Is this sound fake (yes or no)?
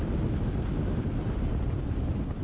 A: no